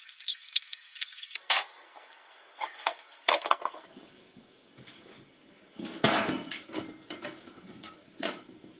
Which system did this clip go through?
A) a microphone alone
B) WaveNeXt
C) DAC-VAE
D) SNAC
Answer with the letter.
D